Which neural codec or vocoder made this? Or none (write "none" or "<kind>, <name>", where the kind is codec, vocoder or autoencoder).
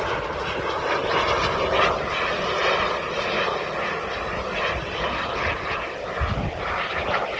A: none